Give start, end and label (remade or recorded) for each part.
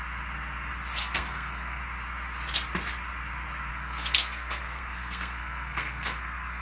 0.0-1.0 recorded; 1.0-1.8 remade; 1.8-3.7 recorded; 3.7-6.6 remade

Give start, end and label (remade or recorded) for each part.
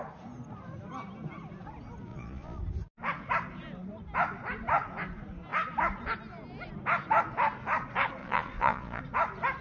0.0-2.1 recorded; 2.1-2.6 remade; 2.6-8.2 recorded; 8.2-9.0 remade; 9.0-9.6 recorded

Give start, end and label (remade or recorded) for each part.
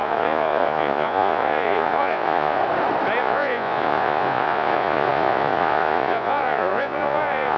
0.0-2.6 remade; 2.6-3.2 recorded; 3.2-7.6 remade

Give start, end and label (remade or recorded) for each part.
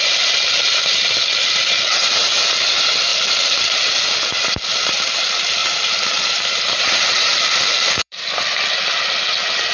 0.0-3.1 recorded; 3.1-3.6 remade; 3.6-5.6 recorded; 5.6-8.3 remade; 8.3-9.7 recorded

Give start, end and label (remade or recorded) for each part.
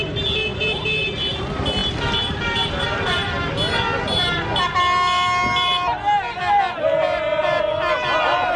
0.0-8.6 recorded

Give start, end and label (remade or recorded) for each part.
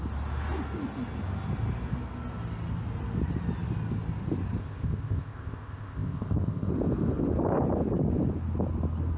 0.0-4.6 recorded; 4.6-6.7 remade; 6.7-9.2 recorded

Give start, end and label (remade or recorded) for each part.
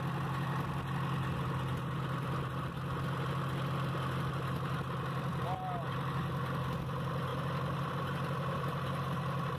0.0-9.6 recorded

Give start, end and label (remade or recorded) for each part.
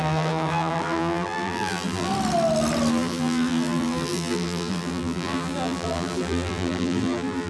0.0-2.1 remade; 2.1-2.9 recorded; 2.9-7.5 remade